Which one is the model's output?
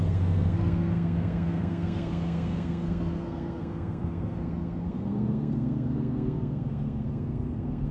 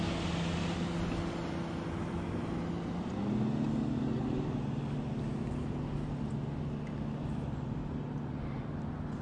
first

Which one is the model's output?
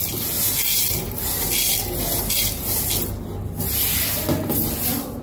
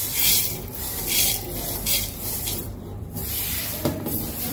second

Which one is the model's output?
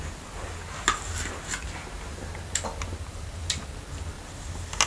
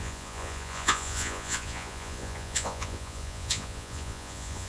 second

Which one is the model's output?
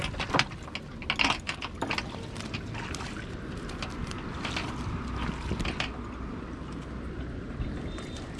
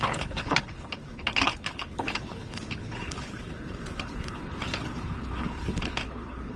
second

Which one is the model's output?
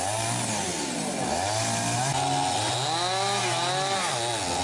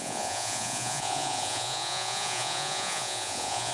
second